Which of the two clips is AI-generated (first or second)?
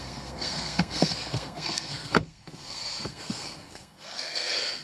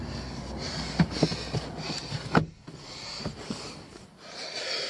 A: first